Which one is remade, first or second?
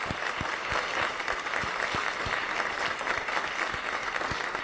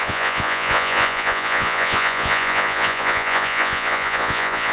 second